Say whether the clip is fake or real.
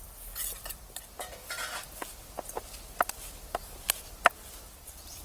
fake